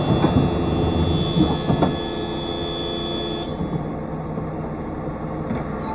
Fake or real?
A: real